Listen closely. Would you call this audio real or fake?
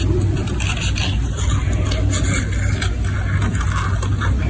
real